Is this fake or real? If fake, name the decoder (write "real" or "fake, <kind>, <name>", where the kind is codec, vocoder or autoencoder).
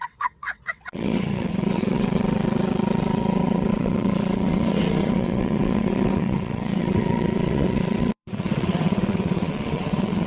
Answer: fake, vocoder, WaveNeXt